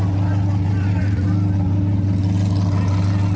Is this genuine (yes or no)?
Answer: yes